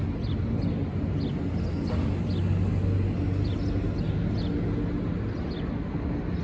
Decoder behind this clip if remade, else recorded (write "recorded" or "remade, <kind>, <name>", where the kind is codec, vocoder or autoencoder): recorded